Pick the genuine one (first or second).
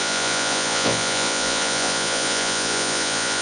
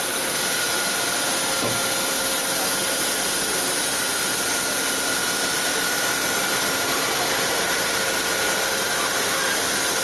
second